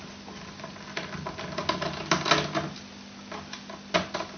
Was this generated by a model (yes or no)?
no